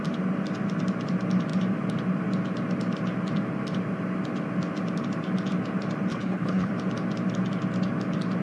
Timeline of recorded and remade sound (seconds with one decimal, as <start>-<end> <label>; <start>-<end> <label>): 0.0-6.1 recorded; 6.1-6.7 remade; 6.7-8.4 recorded